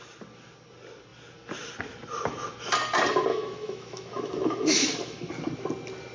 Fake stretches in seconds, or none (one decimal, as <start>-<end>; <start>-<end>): 3.3-5.3